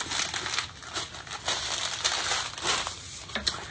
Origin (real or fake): real